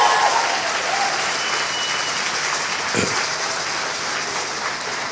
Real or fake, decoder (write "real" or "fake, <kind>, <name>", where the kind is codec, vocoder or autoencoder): real